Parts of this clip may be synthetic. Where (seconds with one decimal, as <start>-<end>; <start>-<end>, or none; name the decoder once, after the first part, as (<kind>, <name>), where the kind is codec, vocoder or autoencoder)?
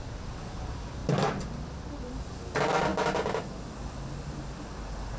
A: none